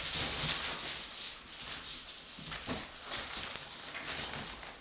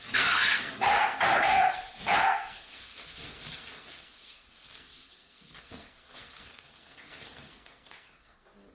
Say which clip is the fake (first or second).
second